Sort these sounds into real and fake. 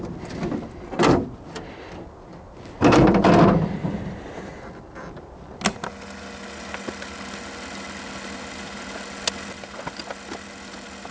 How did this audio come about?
real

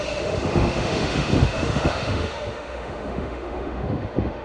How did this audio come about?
fake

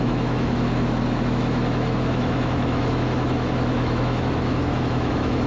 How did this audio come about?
fake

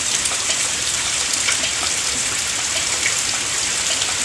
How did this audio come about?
real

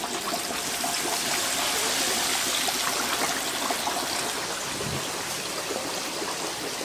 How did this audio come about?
real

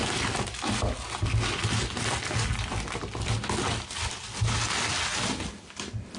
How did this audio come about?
real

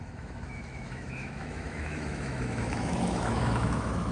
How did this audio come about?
fake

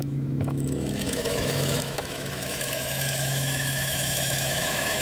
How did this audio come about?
fake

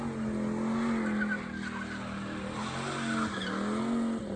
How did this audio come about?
real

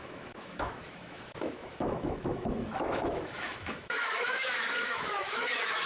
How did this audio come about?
fake